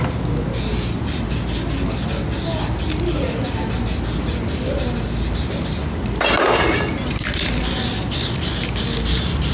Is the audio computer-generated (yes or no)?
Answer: no